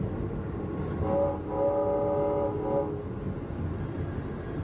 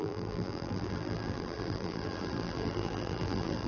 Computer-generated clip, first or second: second